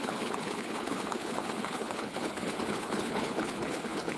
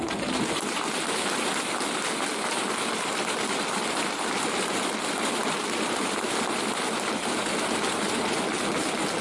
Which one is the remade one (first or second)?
first